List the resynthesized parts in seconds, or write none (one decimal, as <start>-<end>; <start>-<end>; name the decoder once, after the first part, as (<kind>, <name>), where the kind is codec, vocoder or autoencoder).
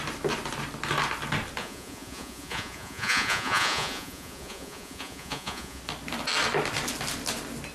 1.6-5.8 (vocoder, Vocos)